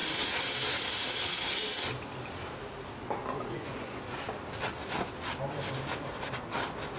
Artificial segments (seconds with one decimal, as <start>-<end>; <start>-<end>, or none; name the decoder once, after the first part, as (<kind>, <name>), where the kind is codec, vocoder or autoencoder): 3.5-4.0 (vocoder, Vocos)